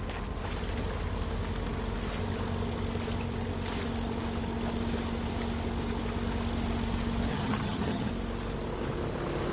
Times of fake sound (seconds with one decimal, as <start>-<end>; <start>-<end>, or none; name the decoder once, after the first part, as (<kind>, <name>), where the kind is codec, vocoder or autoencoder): 7.3-8.1 (vocoder, HiFi-GAN)